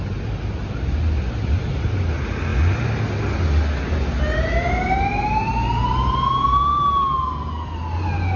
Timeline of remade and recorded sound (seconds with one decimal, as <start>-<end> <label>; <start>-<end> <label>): 0.0-8.4 recorded